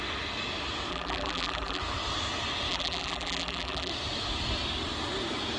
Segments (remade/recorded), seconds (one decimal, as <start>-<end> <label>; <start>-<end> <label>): 0.0-0.9 recorded; 0.9-1.8 remade; 1.8-2.7 recorded; 2.7-3.9 remade; 3.9-5.6 recorded